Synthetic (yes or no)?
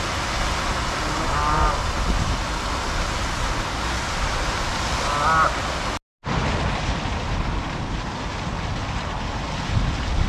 no